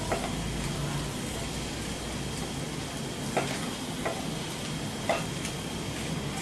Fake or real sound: real